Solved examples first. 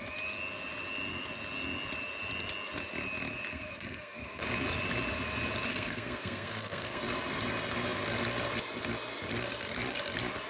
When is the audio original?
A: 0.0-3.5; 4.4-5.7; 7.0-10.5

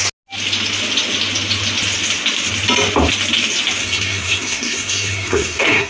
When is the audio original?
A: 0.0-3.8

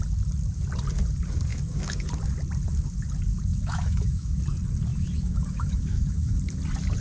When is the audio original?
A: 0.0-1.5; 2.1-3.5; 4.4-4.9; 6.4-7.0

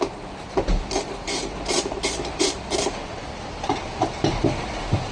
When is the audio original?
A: 0.0-5.1